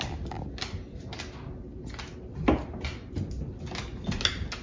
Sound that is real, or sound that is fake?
real